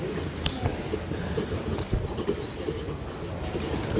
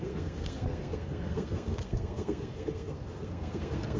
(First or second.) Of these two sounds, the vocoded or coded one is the second